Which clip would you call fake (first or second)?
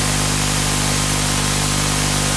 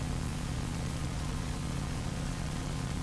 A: second